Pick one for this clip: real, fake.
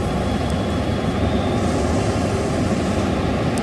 real